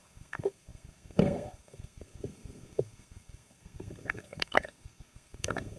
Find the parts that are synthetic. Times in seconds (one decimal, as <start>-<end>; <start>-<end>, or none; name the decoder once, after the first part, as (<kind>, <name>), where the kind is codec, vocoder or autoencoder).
0.0-5.8 (codec, SNAC)